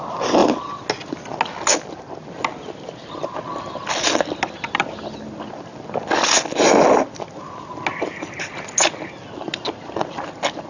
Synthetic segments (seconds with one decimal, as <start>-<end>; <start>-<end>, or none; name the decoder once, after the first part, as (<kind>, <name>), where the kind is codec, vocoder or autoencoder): none